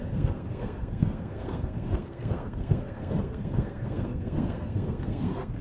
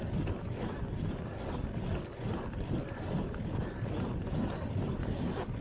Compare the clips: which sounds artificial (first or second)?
first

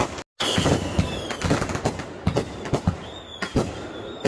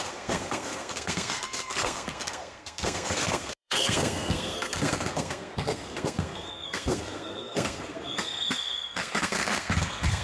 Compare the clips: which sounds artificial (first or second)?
second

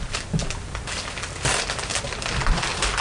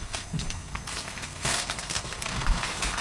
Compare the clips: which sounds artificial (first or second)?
second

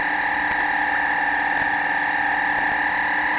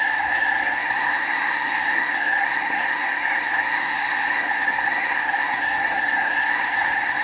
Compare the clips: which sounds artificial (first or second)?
second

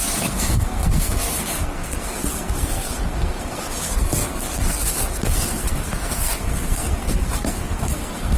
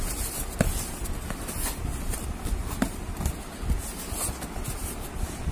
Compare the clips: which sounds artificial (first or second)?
first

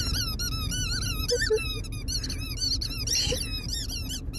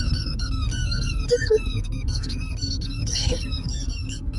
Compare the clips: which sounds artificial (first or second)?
second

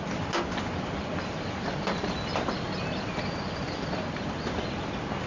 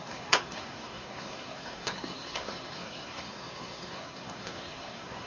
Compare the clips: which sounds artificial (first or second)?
second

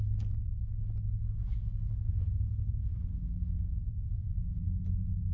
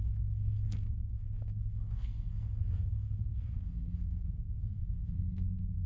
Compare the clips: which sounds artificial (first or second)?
second